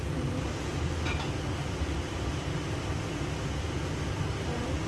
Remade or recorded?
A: recorded